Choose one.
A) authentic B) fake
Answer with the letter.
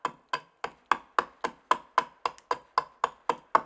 A